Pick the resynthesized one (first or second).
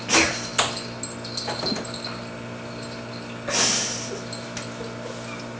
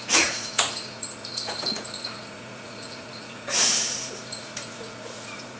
second